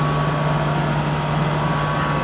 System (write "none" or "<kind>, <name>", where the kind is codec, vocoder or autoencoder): none